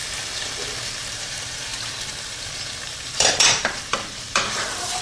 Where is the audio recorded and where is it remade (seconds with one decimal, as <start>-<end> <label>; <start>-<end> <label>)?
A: 0.0-1.1 recorded; 1.1-1.7 remade; 1.7-2.2 recorded; 2.2-5.0 remade